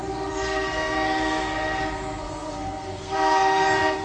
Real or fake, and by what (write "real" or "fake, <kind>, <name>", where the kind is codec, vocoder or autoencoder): fake, codec, SNAC